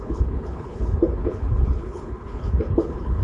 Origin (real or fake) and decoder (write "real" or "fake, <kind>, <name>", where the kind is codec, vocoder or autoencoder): fake, codec, HILCodec